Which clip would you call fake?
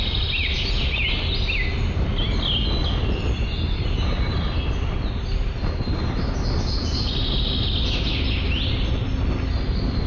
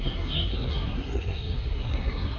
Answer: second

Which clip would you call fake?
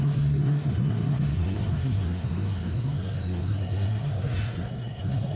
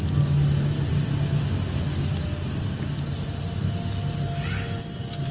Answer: first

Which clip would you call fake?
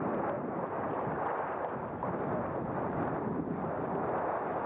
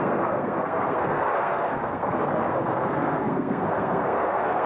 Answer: second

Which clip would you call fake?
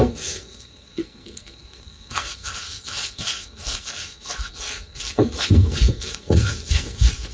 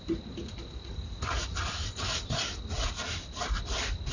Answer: first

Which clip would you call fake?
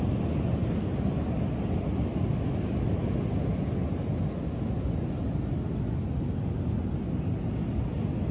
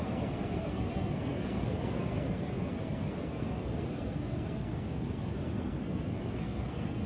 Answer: second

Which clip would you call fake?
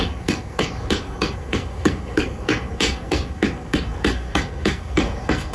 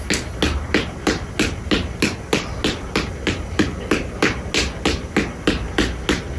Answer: first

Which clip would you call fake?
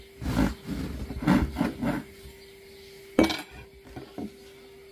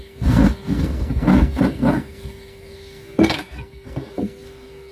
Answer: second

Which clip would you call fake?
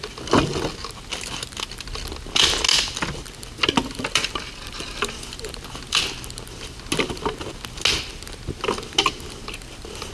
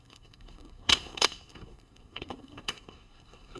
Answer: second